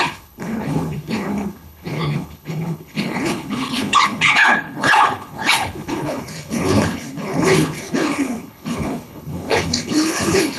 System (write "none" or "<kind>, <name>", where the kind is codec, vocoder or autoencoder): codec, HILCodec